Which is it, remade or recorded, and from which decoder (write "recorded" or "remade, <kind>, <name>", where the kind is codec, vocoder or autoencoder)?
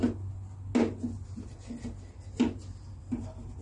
recorded